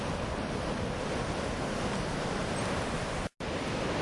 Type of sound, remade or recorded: recorded